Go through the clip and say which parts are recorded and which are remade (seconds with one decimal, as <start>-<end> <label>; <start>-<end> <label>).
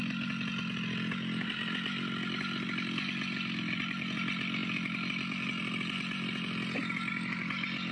0.0-7.9 recorded